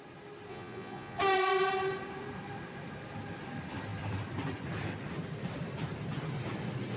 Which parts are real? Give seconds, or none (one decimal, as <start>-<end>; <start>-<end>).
0.0-0.5; 1.2-7.0